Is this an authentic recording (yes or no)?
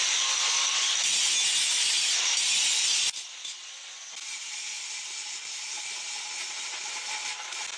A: yes